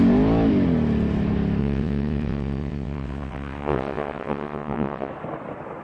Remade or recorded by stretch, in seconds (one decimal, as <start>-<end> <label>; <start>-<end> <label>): 0.0-1.6 recorded; 1.6-5.1 remade; 5.1-5.8 recorded